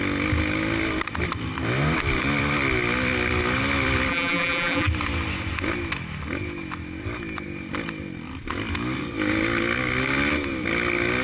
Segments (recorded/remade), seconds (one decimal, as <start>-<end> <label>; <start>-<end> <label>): 0.0-4.1 recorded; 4.1-4.9 remade; 4.9-11.2 recorded